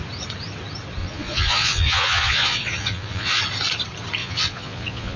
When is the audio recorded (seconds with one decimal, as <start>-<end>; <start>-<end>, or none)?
0.0-1.0; 3.4-4.2